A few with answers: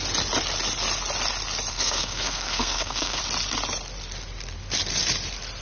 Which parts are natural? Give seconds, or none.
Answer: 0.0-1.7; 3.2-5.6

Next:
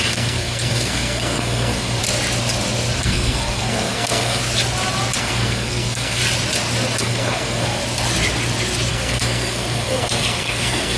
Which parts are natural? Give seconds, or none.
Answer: 2.0-3.0; 4.4-5.2; 6.2-7.0; 7.8-8.9

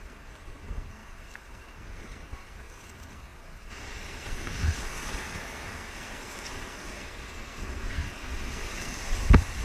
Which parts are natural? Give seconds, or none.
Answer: 8.9-9.6

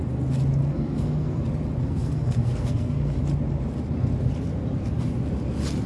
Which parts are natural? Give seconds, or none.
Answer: 0.0-0.7; 1.4-1.8; 3.2-5.9

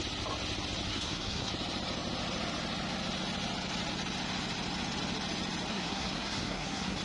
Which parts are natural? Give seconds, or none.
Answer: 0.0-0.9; 1.5-5.7

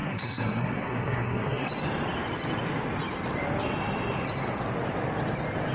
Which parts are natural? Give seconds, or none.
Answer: 1.7-5.7

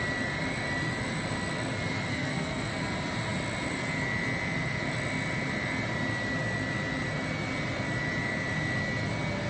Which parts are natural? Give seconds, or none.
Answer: 0.0-2.1; 2.7-9.5